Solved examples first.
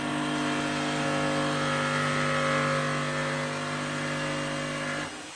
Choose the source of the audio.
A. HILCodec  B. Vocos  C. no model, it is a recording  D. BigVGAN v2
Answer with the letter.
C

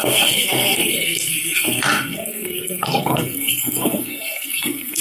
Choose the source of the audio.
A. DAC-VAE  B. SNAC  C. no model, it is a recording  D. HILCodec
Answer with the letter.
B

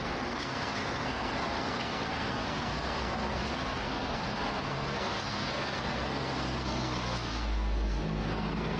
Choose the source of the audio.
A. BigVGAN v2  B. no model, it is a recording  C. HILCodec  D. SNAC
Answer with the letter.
D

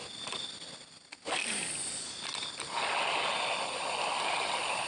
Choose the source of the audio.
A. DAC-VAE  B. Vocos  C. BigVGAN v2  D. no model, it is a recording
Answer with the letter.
D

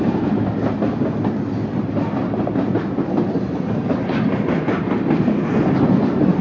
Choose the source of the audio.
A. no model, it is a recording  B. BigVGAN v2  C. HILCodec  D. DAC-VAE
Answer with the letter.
A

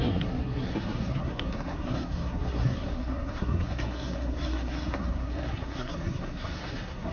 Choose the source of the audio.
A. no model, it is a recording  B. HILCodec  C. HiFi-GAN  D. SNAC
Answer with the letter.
D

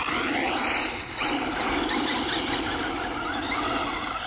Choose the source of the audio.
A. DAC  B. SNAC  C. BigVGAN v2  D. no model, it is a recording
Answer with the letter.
D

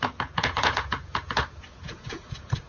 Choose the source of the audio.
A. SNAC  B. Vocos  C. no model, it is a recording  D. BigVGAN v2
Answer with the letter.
B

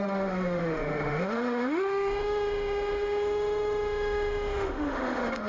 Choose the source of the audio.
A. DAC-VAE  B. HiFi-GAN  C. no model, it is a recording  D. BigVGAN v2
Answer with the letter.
A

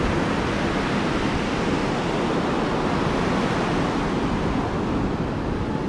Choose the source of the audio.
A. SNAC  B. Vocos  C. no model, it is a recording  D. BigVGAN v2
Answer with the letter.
C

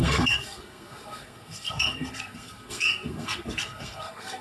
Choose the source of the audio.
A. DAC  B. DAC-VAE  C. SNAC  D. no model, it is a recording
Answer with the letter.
C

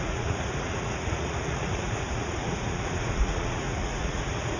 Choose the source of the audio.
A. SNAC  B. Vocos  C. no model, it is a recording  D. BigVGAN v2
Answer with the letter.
B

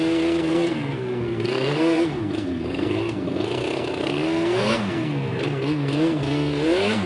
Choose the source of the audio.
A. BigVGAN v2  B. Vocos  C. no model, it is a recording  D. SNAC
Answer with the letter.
D